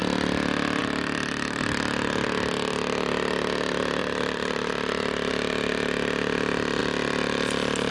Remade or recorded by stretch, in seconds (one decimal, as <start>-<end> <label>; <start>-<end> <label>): 0.0-0.8 recorded; 0.8-1.6 remade; 1.6-4.0 recorded; 4.0-5.3 remade; 5.3-7.9 recorded